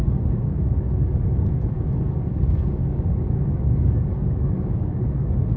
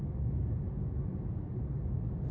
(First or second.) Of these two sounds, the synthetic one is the first